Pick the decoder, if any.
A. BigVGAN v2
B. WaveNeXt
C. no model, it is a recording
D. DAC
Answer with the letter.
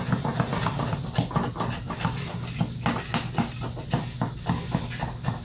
C